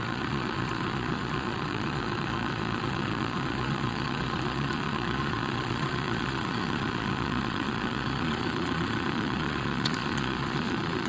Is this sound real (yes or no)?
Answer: no